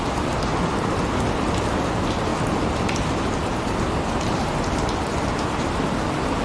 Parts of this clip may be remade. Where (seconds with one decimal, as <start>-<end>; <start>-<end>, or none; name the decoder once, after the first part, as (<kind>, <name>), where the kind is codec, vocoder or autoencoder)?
none